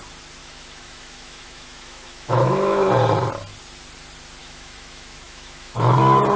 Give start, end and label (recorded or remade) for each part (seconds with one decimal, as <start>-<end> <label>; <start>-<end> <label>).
0.0-0.4 recorded; 0.4-2.9 remade; 2.9-4.4 recorded; 4.4-6.0 remade; 6.0-6.4 recorded